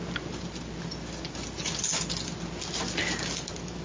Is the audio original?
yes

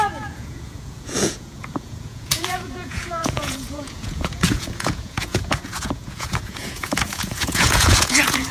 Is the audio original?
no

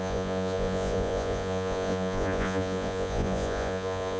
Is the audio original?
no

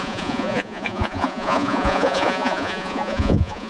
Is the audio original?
no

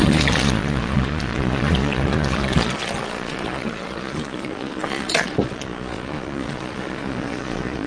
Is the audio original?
no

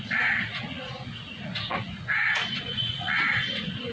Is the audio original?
no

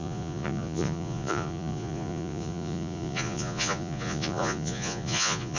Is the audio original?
no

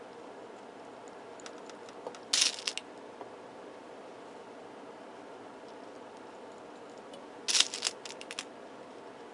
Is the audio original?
yes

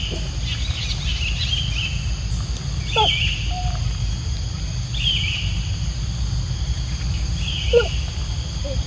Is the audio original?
yes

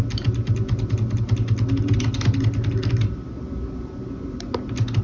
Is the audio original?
yes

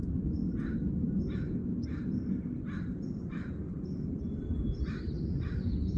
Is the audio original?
yes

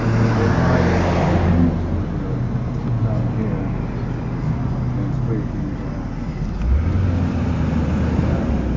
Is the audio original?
yes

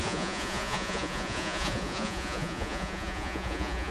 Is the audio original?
no